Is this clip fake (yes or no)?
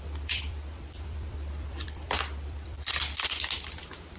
yes